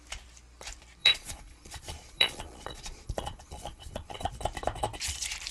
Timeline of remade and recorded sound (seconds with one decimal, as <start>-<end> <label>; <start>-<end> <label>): 0.0-1.0 recorded; 1.0-4.3 remade; 4.3-5.5 recorded